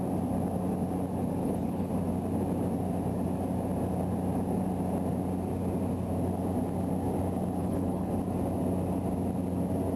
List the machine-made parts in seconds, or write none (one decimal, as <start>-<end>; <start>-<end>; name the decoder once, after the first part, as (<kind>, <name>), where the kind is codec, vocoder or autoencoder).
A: 1.4-1.9 (codec, HILCodec); 7.6-8.1